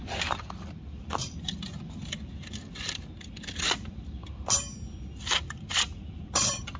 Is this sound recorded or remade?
recorded